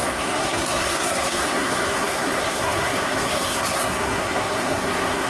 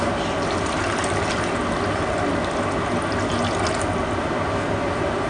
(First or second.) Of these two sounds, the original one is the second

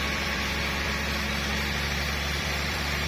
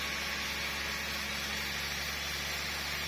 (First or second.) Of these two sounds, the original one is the second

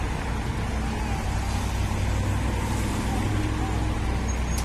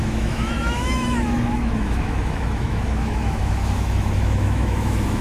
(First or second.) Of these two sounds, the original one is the first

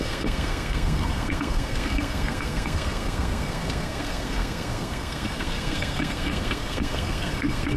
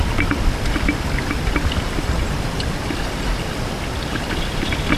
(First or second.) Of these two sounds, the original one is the second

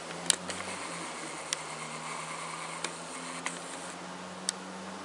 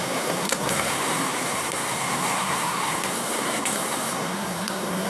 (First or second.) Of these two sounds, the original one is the first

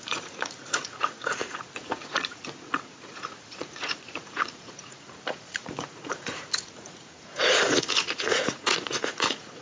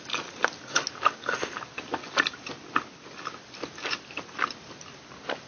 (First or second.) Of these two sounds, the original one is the second